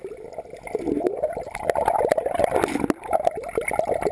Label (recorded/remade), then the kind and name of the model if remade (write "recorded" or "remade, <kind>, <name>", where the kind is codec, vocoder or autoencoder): recorded